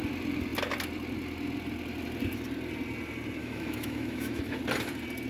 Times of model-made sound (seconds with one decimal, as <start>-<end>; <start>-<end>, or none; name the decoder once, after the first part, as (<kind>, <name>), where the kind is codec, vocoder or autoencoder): 3.4-4.6 (autoencoder, DAC-VAE)